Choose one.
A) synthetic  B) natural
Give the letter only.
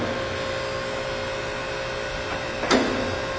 B